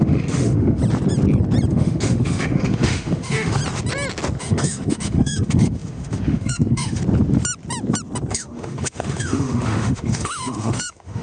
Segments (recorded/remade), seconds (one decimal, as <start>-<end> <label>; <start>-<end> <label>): 0.0-0.8 remade; 0.8-1.7 recorded; 1.7-3.6 remade; 3.6-4.4 recorded; 4.4-7.0 remade; 7.0-8.3 recorded; 8.3-11.2 remade